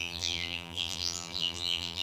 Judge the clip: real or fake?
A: fake